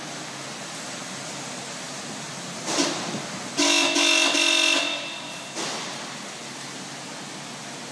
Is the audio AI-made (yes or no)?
no